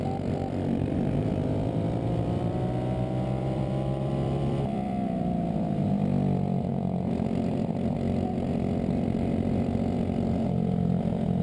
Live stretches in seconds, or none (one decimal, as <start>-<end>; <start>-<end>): 6.7-7.7